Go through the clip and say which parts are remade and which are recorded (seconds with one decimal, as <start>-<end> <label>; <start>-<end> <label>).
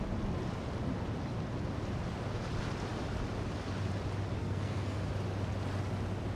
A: 0.0-4.4 recorded; 4.4-5.1 remade; 5.1-6.4 recorded